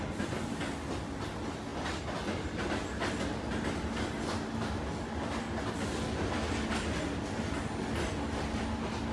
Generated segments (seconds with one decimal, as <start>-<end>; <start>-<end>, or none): none